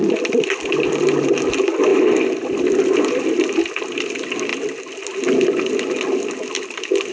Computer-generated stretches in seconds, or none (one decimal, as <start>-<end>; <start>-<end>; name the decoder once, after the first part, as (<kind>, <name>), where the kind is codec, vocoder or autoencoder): none